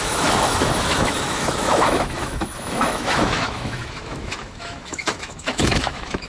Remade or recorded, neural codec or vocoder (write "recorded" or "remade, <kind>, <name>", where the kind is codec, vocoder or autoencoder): remade, autoencoder, DAC-VAE